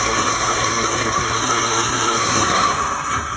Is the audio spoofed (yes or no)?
yes